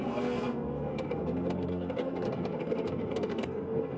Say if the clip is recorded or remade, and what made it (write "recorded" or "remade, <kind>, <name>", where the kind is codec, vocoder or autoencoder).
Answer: remade, codec, SNAC